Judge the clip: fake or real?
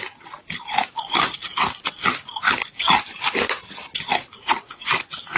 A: real